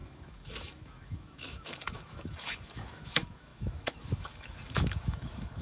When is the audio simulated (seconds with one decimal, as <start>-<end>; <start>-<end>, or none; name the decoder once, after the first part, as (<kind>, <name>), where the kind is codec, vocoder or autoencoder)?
0.0-5.6 (autoencoder, DAC-VAE)